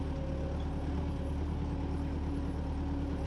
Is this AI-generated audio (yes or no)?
no